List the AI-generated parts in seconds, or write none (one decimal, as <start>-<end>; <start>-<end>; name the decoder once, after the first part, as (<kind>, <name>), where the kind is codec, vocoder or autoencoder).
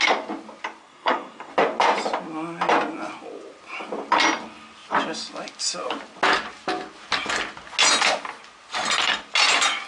0.8-1.5 (codec, SNAC)